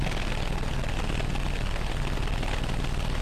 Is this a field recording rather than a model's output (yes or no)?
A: yes